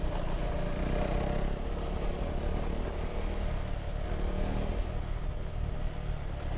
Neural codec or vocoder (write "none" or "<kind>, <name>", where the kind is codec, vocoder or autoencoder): none